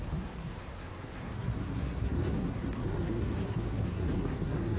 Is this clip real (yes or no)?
no